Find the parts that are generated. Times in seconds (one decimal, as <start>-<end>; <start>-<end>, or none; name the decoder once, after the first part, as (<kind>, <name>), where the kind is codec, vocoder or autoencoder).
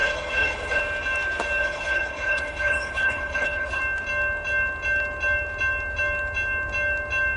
0.0-0.8 (codec, HILCodec); 1.6-3.8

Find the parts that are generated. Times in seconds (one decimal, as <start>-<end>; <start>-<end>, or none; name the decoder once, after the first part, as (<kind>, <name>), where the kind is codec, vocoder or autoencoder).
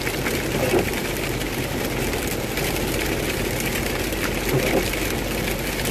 none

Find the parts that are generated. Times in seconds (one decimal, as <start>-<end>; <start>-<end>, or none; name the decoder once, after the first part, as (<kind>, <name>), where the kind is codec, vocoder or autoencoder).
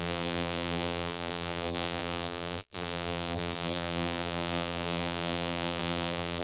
0.0-6.4 (vocoder, BigVGAN v2)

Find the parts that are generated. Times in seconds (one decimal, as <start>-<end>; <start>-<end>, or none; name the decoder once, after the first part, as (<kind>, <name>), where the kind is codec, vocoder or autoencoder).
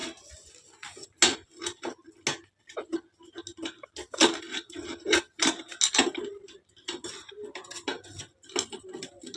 none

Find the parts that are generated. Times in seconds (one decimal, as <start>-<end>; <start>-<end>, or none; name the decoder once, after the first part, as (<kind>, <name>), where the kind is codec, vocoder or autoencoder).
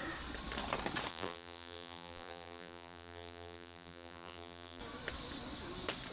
1.1-4.8 (vocoder, BigVGAN v2)